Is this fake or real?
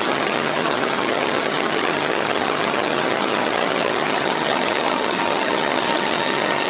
fake